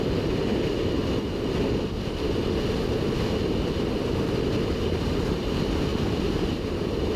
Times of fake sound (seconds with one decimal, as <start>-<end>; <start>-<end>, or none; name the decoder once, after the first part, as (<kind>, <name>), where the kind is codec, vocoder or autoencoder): none